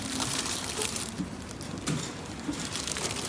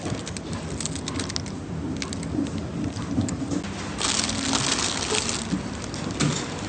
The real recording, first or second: second